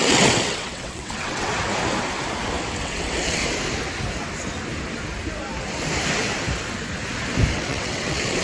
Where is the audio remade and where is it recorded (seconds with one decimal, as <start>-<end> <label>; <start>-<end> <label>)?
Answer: 0.0-1.5 remade; 1.5-2.7 recorded; 2.7-3.4 remade; 3.4-7.5 recorded; 7.5-8.4 remade

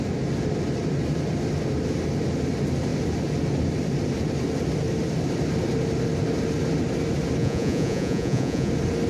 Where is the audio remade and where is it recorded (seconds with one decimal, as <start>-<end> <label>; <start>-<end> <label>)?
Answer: 0.0-7.4 recorded; 7.4-8.7 remade; 8.7-9.1 recorded

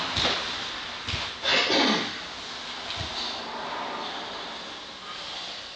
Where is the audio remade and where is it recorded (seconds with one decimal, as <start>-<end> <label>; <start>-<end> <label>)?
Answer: 0.0-5.8 recorded

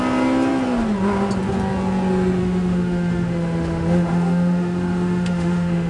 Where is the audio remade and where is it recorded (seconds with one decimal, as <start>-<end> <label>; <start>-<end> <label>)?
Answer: 0.0-2.4 recorded; 2.4-5.9 remade

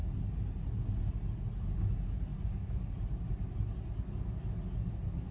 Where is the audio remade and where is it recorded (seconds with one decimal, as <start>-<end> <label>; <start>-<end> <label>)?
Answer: 0.0-5.3 recorded

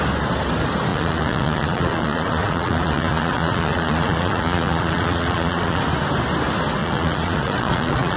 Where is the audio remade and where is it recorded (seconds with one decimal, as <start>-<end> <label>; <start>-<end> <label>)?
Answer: 0.0-0.9 recorded; 0.9-5.8 remade; 5.8-6.8 recorded; 6.8-8.2 remade

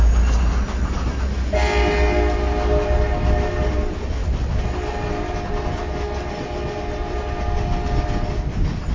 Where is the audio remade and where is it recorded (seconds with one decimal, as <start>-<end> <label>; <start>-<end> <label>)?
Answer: 0.0-8.9 recorded

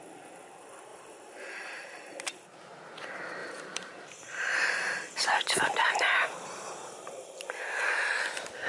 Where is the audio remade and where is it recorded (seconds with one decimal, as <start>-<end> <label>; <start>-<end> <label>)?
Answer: 0.0-0.9 recorded; 0.9-2.2 remade; 2.2-3.4 recorded; 3.4-7.2 remade; 7.2-8.7 recorded